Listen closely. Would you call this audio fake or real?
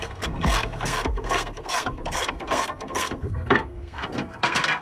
fake